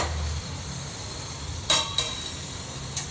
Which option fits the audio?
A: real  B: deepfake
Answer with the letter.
B